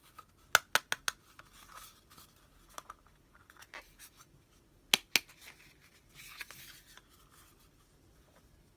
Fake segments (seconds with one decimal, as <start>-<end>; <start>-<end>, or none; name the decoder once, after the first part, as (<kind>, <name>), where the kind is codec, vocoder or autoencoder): none